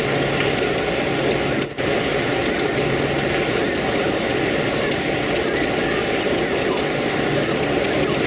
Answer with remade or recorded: recorded